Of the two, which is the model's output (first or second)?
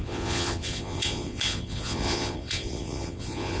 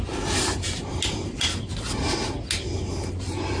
first